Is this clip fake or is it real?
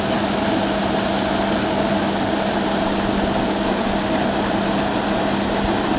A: real